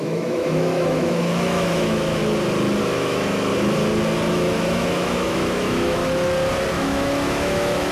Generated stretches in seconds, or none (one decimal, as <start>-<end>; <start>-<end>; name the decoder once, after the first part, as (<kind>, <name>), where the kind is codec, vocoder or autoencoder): 0.0-2.2 (autoencoder, DAC-VAE); 2.8-3.5; 4.3-6.0; 6.7-7.9